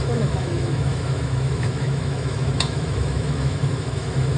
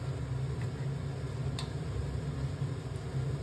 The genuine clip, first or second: second